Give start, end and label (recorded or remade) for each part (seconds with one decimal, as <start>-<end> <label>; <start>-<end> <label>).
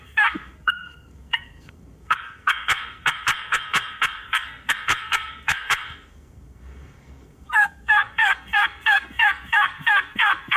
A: 0.0-10.6 remade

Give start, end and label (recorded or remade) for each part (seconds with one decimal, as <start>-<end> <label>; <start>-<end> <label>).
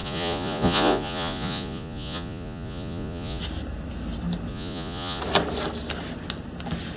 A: 0.0-3.4 remade; 3.4-4.5 recorded; 4.5-5.2 remade; 5.2-7.0 recorded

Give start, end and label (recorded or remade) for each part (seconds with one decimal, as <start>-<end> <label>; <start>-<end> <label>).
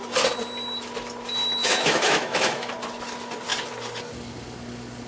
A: 0.0-1.6 recorded; 1.6-2.7 remade; 2.7-5.1 recorded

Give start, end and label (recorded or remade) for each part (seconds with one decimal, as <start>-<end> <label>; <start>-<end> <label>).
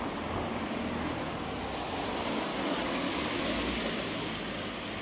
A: 0.0-2.5 recorded; 2.5-3.9 remade; 3.9-5.0 recorded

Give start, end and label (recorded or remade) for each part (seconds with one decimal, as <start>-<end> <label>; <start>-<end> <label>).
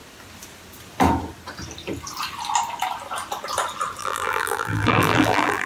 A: 0.0-4.0 recorded; 4.0-5.7 remade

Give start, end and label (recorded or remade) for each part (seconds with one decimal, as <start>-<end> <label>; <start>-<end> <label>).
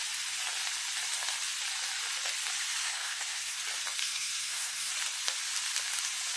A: 0.0-2.8 recorded; 2.8-3.6 remade; 3.6-4.0 recorded; 4.0-4.9 remade; 4.9-6.4 recorded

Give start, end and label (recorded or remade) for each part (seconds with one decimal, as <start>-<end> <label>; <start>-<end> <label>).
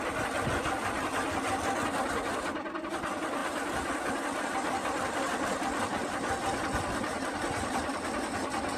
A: 0.0-8.8 recorded